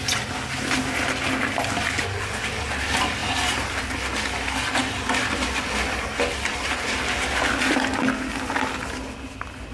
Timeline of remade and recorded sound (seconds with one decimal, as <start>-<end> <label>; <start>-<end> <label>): 0.0-9.7 recorded